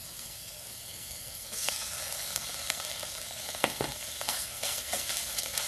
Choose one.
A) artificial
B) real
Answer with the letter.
A